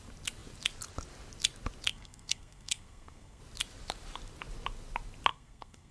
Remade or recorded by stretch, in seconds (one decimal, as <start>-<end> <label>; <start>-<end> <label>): 0.0-1.9 recorded; 1.9-3.4 remade; 3.4-5.3 recorded; 5.3-5.9 remade